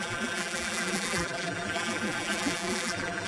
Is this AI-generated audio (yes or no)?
yes